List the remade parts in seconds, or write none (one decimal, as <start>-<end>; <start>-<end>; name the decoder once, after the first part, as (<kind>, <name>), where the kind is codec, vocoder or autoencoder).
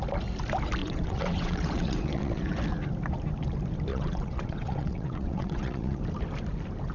0.8-2.4 (vocoder, WaveNeXt); 3.9-6.0